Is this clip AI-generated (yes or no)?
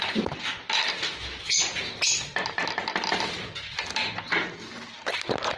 no